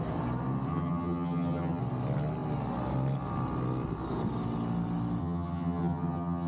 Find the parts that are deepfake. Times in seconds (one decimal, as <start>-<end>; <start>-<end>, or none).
0.7-1.8; 5.2-6.5